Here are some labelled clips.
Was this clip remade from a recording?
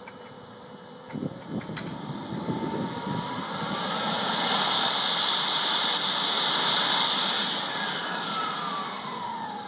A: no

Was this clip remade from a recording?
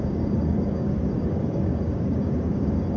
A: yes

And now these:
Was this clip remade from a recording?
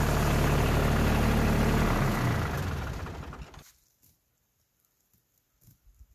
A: no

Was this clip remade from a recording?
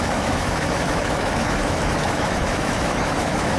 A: yes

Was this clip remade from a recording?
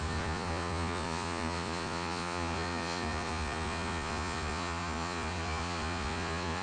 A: yes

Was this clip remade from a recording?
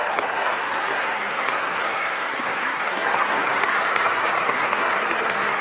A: yes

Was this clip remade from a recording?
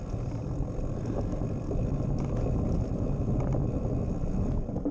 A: no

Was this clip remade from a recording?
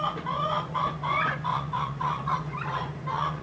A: yes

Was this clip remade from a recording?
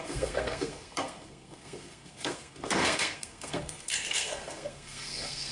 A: yes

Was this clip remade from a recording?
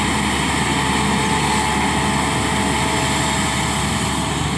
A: no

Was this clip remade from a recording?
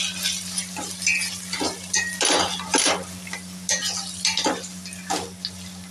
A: no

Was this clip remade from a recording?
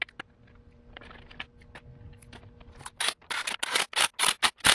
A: no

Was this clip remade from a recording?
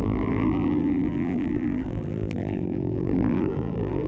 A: yes